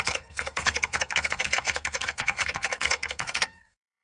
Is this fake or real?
fake